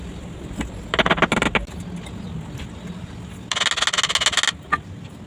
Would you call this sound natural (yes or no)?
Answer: yes